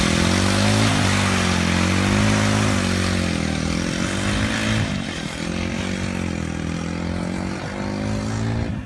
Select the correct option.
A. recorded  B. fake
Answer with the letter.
A